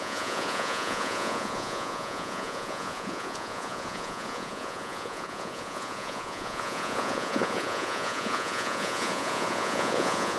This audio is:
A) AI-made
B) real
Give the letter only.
A